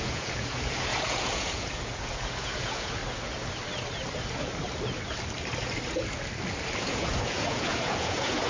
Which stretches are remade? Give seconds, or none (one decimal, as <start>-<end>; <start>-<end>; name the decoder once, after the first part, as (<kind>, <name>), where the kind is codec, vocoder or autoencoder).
0.0-3.0 (vocoder, Vocos); 6.8-8.5